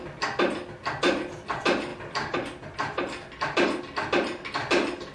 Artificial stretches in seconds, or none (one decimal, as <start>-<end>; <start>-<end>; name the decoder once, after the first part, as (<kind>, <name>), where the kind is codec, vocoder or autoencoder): none